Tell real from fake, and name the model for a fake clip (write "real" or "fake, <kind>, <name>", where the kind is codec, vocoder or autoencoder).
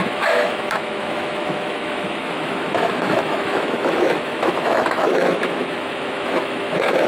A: fake, autoencoder, DAC-VAE